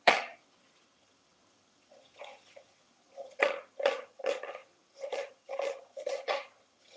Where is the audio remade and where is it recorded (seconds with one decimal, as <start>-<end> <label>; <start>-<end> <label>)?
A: 0.0-7.0 remade